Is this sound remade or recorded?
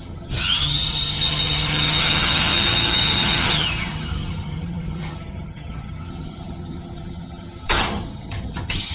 remade